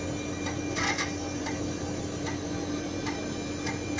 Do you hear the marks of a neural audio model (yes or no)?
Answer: no